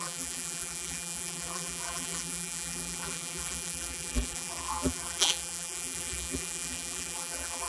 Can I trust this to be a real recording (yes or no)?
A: no